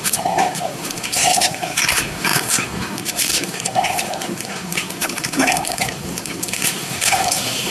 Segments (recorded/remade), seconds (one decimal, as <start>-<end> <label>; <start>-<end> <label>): 0.0-7.7 remade